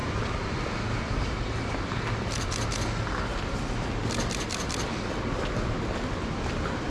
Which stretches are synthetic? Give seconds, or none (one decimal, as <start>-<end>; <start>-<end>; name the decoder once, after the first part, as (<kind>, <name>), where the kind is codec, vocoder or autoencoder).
none